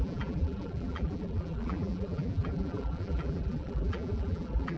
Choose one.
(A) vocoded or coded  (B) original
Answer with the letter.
A